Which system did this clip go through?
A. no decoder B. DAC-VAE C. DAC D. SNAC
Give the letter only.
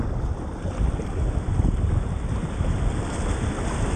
A